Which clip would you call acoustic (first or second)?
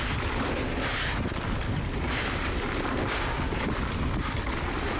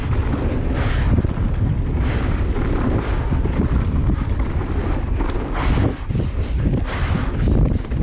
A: first